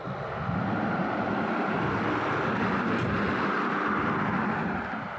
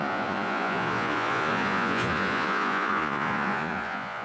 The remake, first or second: second